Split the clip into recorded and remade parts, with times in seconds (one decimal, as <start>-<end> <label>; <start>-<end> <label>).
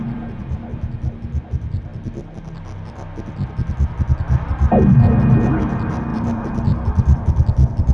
0.0-0.7 remade; 0.7-1.4 recorded; 1.4-1.9 remade; 1.9-5.6 recorded; 5.6-7.9 remade